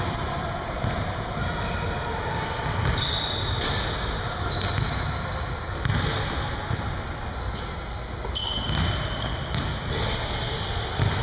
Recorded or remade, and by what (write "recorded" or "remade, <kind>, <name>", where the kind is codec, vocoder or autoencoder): recorded